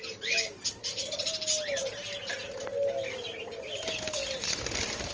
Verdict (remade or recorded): recorded